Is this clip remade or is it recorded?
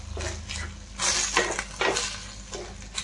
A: recorded